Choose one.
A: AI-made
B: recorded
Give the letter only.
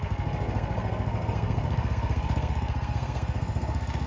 A